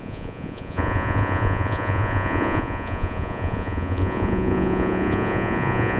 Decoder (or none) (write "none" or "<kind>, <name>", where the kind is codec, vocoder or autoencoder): vocoder, Vocos